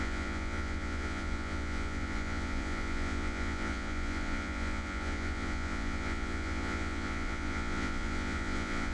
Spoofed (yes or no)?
yes